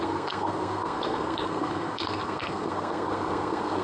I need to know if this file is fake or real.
fake